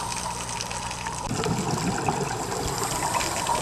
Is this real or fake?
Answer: real